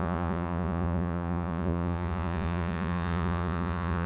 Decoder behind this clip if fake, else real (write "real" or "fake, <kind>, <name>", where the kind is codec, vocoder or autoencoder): fake, vocoder, Vocos